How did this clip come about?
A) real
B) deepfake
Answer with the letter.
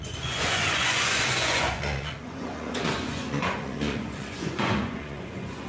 B